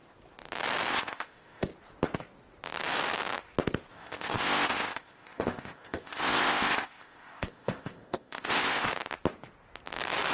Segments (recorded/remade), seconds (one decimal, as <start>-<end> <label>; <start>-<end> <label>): 0.0-0.9 recorded; 0.9-1.7 remade; 1.7-3.9 recorded; 3.9-8.9 remade; 8.9-10.3 recorded